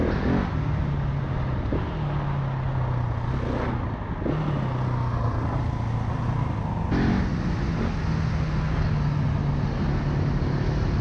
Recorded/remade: recorded